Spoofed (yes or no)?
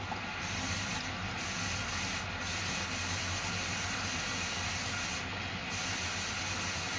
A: no